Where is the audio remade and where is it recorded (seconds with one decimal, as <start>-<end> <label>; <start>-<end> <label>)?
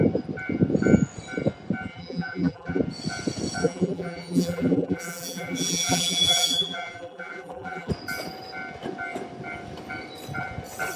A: 0.0-1.9 recorded; 1.9-2.8 remade; 2.8-3.6 recorded; 3.6-7.9 remade; 7.9-11.0 recorded